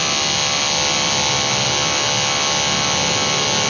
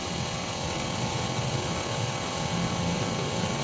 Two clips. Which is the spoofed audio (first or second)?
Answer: second